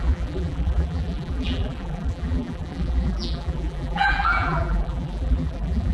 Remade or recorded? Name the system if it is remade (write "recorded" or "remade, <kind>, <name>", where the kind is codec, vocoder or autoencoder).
remade, vocoder, BigVGAN v2